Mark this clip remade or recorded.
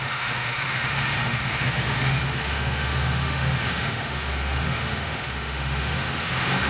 remade